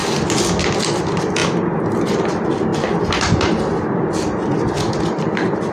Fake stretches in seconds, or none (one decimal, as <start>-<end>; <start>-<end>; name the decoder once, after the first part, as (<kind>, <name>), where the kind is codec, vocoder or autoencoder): 0.6-1.4 (vocoder, BigVGAN v2); 2.1-2.7; 5.2-5.7